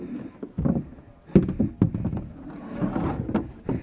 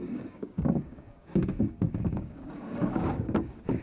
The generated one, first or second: second